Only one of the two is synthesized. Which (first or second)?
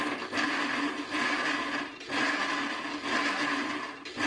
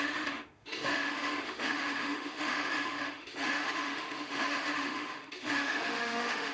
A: second